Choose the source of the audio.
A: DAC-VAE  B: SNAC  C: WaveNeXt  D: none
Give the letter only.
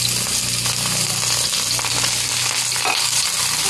D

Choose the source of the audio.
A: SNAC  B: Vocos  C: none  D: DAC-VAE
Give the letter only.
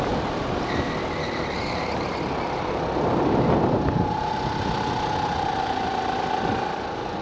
C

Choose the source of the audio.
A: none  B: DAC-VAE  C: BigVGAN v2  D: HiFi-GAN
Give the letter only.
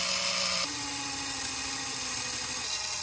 A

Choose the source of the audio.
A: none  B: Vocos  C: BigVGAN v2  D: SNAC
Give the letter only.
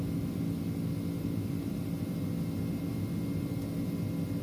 A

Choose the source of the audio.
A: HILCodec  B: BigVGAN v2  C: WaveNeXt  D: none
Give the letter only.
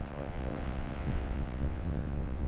C